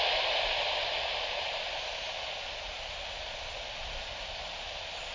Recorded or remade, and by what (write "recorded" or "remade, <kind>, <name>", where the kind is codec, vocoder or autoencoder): recorded